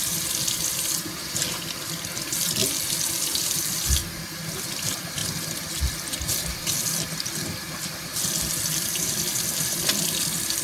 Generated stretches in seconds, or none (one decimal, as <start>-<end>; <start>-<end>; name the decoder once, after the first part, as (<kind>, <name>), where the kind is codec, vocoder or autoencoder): 0.0-2.6 (vocoder, BigVGAN v2); 3.2-4.0; 4.6-5.2; 7.6-10.6